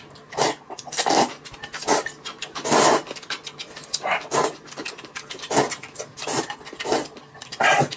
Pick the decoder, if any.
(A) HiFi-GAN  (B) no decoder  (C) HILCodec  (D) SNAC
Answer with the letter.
B